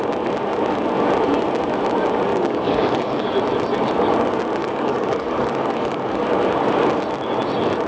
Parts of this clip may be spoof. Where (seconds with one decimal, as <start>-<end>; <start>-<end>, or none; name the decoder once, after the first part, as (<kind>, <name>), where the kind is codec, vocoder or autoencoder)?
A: 2.3-3.3 (codec, DAC); 4.6-6.2